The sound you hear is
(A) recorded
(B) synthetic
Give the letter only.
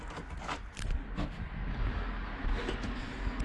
A